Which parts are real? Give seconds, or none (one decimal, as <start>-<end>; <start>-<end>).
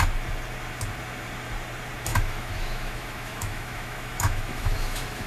0.0-2.1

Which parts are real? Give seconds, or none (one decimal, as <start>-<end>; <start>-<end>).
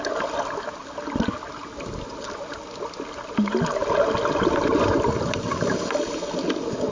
0.0-6.9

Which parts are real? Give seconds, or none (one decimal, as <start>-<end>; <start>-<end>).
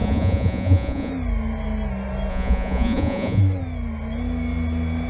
1.1-2.3; 3.4-5.1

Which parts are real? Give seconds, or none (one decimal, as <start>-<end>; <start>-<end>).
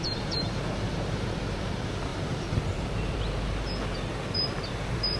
none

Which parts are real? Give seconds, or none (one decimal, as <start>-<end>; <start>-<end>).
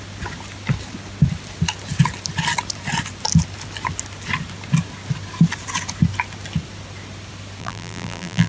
0.0-7.6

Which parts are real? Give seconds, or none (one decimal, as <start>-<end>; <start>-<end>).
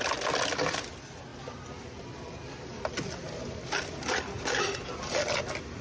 0.0-5.8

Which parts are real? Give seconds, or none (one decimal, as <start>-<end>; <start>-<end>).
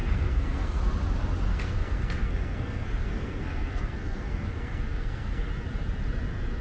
0.8-1.5; 5.5-6.6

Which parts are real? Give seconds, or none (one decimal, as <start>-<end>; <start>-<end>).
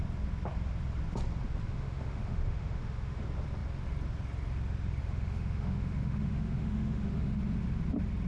0.0-1.7; 3.2-5.0; 7.4-8.3